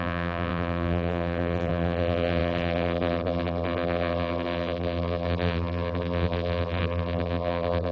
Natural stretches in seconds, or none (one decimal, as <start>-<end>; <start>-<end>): none